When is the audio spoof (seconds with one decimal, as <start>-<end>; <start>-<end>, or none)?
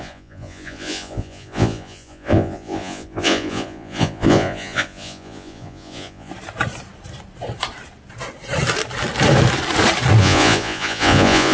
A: 0.0-6.3; 10.2-11.5